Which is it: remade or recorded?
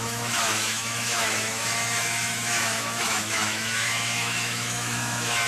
remade